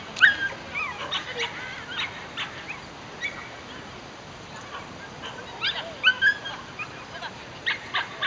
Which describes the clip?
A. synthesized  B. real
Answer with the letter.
B